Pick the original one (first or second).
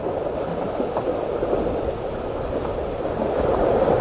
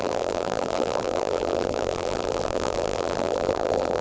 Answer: first